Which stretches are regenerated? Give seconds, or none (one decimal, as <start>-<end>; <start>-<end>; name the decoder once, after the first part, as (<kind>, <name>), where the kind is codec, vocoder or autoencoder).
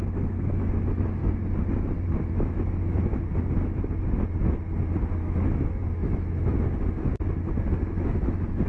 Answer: 0.0-1.2 (autoencoder, DAC-VAE); 2.3-3.1; 5.1-7.1; 8.0-8.7